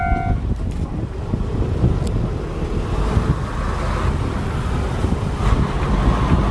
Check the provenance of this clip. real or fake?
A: real